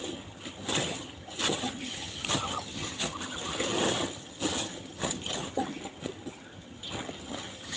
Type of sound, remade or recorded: remade